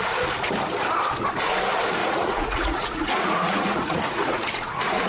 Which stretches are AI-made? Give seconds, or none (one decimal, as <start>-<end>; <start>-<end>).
2.0-5.1

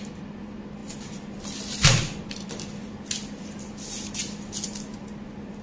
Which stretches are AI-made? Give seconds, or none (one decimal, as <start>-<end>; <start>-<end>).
none

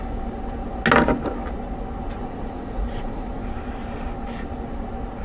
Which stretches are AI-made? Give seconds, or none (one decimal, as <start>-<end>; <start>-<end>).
2.2-3.4

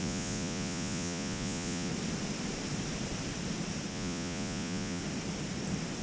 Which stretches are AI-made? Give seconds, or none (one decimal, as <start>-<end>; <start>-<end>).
0.0-1.9; 3.9-5.0

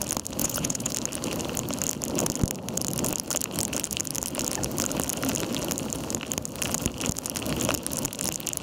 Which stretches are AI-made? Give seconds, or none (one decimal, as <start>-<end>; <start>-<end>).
0.4-0.9

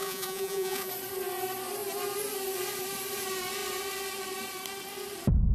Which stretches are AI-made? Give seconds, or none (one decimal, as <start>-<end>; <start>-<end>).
0.0-0.9